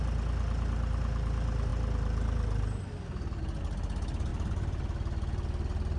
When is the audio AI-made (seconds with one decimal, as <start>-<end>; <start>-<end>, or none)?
none